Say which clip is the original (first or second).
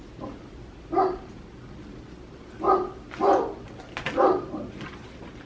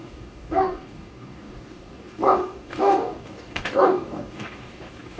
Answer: first